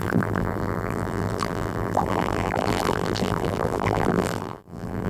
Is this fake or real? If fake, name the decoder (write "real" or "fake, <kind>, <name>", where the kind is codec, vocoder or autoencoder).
fake, vocoder, BigVGAN v2